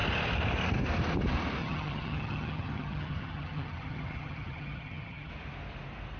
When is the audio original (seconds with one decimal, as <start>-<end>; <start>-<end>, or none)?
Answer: 0.0-1.6; 5.3-6.2